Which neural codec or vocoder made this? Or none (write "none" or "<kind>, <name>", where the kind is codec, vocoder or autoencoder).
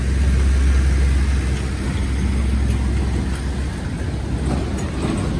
none